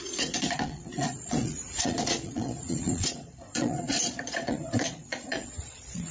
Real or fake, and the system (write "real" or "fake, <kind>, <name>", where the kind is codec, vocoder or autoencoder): fake, vocoder, Vocos